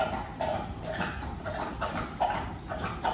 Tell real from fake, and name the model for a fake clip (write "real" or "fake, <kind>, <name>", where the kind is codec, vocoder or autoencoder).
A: real